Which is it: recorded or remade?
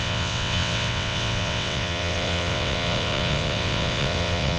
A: remade